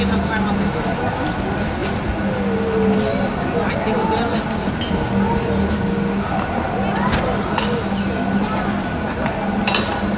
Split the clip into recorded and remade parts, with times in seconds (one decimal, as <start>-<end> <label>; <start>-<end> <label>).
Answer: 0.0-10.2 recorded